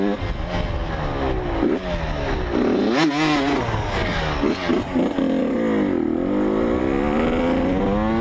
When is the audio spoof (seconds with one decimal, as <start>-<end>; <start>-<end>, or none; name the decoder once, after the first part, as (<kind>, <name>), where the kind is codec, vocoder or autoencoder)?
none